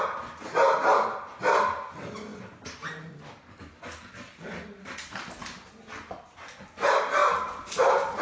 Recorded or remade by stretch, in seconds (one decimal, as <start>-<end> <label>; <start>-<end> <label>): 0.0-5.0 recorded; 5.0-5.7 remade; 5.7-7.2 recorded; 7.2-8.2 remade